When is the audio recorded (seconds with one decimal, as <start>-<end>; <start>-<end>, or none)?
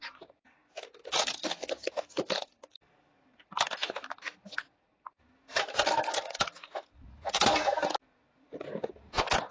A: 0.0-9.5